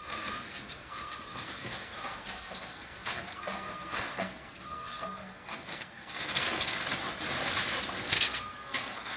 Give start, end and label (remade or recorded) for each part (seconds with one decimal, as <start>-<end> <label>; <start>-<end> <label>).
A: 0.0-6.8 remade; 6.8-8.0 recorded; 8.0-9.2 remade

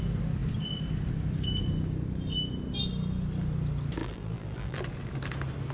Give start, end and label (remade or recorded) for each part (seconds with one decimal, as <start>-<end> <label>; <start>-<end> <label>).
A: 0.0-4.0 recorded; 4.0-4.8 remade; 4.8-5.7 recorded

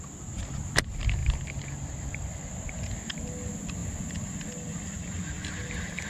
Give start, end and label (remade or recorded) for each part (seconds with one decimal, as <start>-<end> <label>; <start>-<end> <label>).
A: 0.0-1.2 recorded; 1.2-2.5 remade; 2.5-6.1 recorded

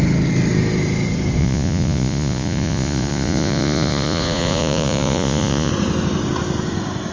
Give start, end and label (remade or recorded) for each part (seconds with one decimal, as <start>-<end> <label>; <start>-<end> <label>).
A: 0.0-1.4 recorded; 1.4-5.7 remade; 5.7-7.1 recorded

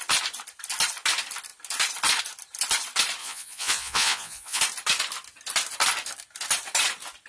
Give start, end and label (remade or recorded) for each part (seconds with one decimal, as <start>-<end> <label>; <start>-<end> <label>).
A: 0.0-3.2 recorded; 3.2-4.6 remade; 4.6-7.3 recorded

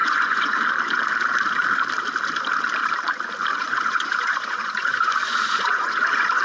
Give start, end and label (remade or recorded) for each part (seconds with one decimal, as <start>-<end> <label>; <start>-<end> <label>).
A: 0.0-0.6 remade; 0.6-3.5 recorded; 3.5-6.4 remade